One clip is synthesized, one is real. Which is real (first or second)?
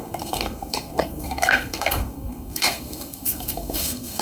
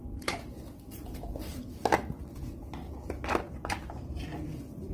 second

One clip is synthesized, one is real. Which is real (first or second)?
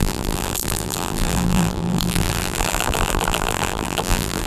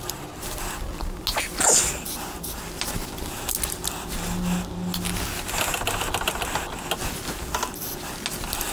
second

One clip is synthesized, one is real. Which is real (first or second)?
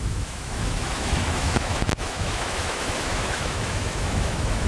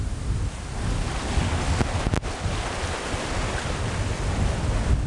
second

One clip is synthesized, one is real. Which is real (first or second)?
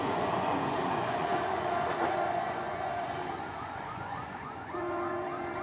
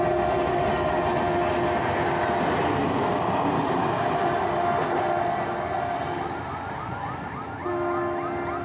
second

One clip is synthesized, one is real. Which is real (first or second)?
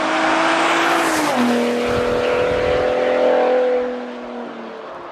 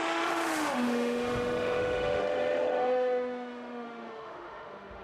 first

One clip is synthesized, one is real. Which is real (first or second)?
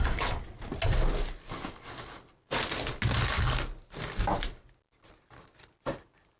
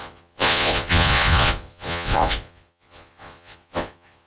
first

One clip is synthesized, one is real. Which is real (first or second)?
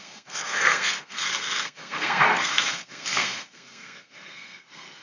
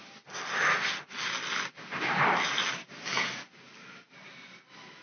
second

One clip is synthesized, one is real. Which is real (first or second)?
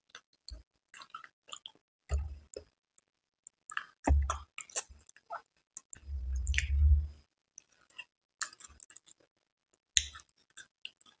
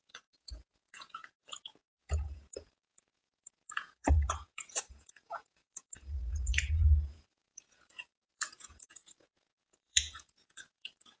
first